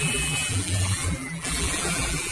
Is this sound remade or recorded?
remade